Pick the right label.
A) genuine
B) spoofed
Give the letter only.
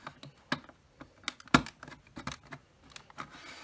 A